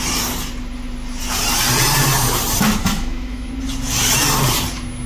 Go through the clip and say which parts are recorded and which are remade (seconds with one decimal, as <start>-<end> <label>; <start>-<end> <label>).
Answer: 0.0-2.8 recorded; 2.8-3.5 remade; 3.5-5.1 recorded